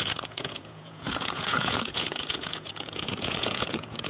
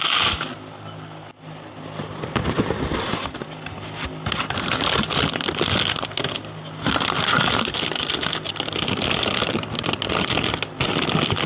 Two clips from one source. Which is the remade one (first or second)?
first